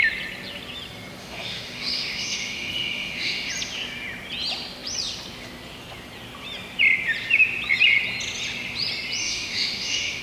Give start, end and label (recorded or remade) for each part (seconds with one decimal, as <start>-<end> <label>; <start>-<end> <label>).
0.0-1.2 recorded; 1.2-3.5 remade; 3.5-9.2 recorded; 9.2-10.2 remade